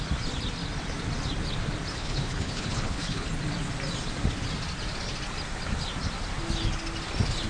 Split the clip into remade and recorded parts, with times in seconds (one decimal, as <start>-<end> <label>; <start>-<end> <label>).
0.0-1.9 recorded; 1.9-3.3 remade; 3.3-7.5 recorded